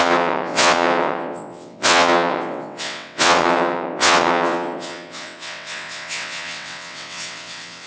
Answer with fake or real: fake